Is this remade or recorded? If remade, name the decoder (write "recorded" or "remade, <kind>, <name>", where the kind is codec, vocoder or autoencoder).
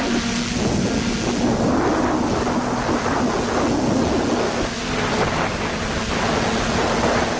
recorded